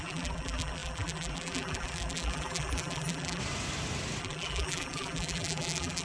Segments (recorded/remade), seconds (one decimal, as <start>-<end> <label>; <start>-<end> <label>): 0.0-3.4 remade; 3.4-4.2 recorded; 4.2-6.0 remade